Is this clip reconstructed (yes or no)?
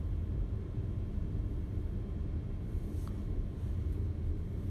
no